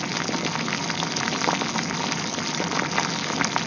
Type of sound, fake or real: real